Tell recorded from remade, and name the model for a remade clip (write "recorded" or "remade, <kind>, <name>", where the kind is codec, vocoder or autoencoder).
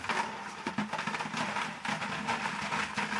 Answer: recorded